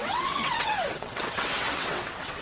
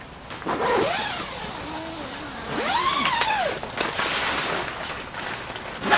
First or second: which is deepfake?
first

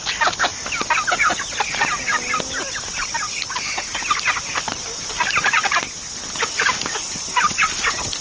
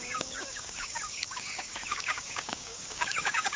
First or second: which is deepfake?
second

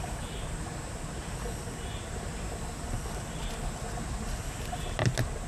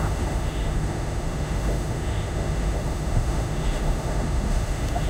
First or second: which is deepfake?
second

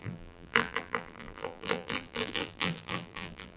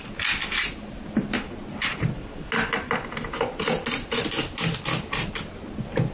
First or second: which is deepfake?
first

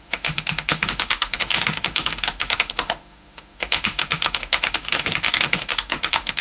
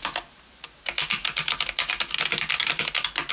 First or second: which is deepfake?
first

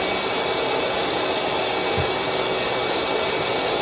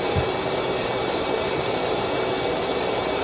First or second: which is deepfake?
second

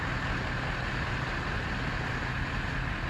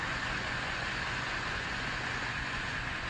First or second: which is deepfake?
second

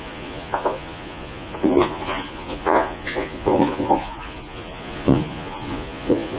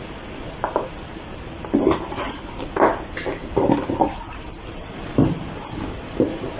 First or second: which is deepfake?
first